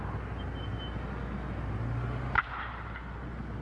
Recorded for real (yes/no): yes